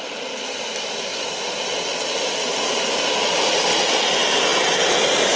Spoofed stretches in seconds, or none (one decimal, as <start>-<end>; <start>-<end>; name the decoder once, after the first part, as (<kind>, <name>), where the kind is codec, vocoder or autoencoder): none